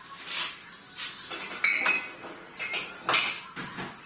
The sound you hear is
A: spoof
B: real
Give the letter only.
B